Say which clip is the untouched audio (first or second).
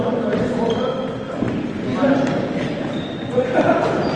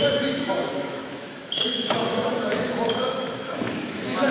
first